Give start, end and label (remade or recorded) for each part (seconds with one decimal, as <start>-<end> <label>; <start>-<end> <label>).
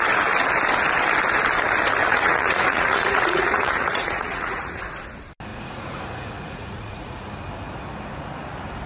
0.0-2.1 recorded; 2.1-4.8 remade; 4.8-5.5 recorded; 5.5-7.3 remade; 7.3-8.9 recorded